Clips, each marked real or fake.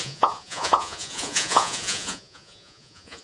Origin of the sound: fake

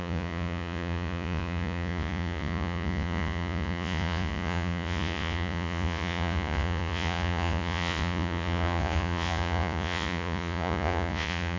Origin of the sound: fake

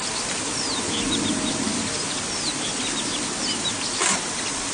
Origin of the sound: real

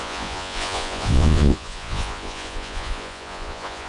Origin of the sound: fake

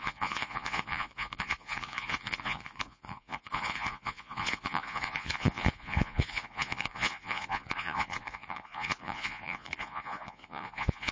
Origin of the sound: fake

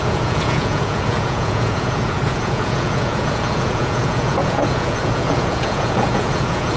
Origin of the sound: fake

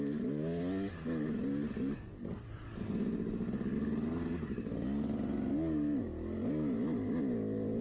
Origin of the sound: real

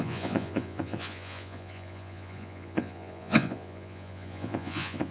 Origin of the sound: fake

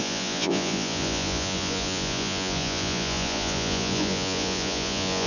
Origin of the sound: fake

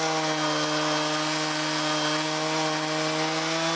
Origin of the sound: real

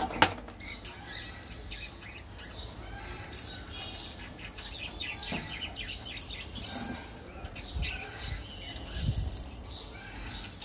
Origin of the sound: real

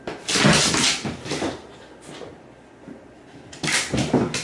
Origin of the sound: real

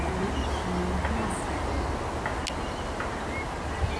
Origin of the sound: real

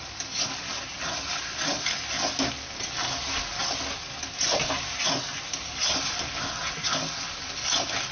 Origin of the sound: real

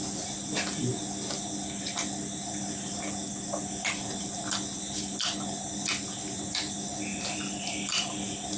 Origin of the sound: real